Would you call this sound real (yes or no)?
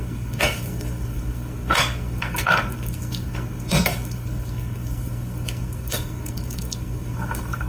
no